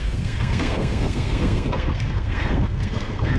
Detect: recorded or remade remade